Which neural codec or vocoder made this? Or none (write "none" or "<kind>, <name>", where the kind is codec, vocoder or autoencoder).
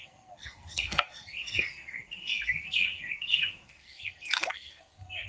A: codec, SNAC